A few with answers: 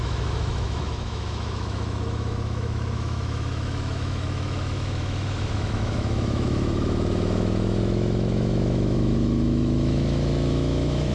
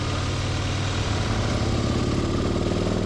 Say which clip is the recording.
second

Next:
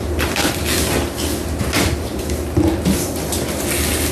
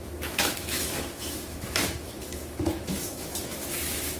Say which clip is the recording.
first